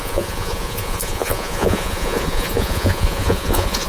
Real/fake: fake